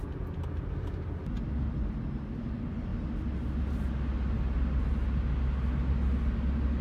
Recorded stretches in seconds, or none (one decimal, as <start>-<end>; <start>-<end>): 0.0-6.8